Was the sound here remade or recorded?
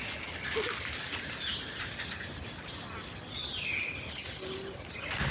recorded